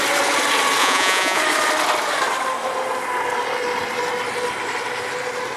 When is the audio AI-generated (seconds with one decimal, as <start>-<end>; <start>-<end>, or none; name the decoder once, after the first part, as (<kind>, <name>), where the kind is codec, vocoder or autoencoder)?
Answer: 0.8-1.4 (vocoder, Vocos)